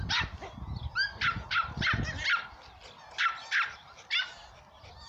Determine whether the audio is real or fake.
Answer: real